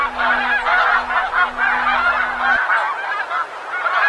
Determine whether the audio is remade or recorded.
recorded